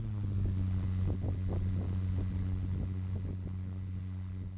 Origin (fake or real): real